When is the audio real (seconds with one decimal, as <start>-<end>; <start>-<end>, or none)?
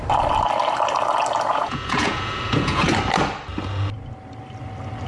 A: 0.0-1.5; 2.9-5.1